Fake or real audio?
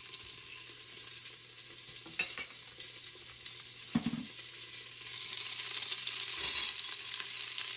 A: real